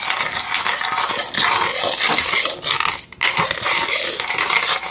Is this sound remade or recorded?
recorded